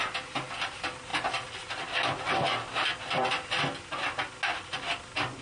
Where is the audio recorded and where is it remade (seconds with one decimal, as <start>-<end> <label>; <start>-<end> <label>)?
0.0-5.4 recorded